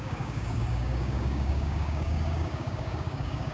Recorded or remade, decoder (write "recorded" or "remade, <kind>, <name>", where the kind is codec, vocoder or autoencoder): remade, codec, DAC